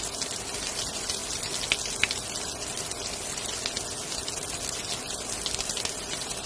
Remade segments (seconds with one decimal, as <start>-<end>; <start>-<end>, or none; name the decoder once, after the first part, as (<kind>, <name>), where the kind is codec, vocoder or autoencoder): 0.0-1.2 (vocoder, BigVGAN v2); 5.1-6.5